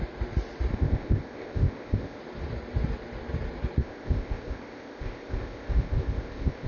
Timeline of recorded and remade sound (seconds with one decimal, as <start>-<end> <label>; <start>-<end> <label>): 0.0-0.7 recorded; 0.7-2.2 remade; 2.2-3.8 recorded; 3.8-6.7 remade